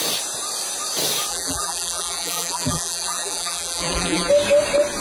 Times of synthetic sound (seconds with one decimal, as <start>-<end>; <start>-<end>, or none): 1.3-4.3